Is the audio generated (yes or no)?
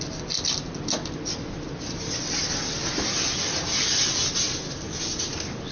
no